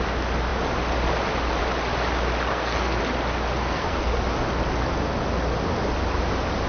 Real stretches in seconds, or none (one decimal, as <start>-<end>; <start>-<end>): 0.0-2.5; 3.0-3.6; 4.2-6.7